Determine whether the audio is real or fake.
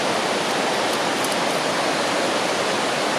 real